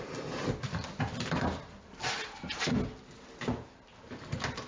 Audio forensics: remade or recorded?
recorded